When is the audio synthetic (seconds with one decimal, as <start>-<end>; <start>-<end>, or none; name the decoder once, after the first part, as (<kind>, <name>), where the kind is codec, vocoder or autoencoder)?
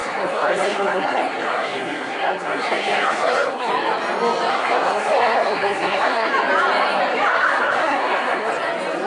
0.0-3.7 (codec, SNAC); 4.5-6.3; 7.3-8.5